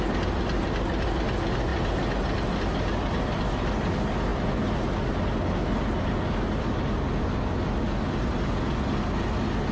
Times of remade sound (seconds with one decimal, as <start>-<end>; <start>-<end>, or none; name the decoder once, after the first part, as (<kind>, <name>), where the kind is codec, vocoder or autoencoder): none